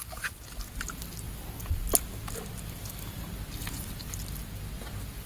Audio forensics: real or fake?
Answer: real